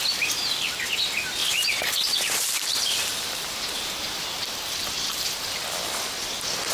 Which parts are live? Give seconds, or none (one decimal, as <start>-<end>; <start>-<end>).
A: 0.0-1.4; 5.1-6.7